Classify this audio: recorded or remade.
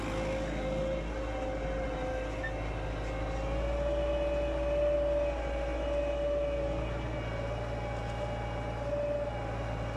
recorded